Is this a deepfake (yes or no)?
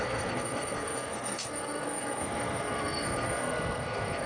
yes